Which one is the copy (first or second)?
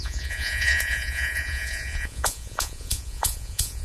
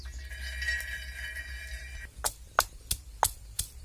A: first